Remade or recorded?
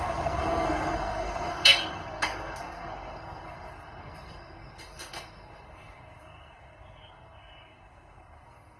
remade